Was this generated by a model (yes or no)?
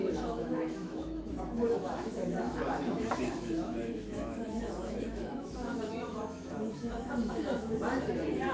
yes